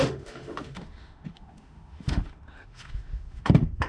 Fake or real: fake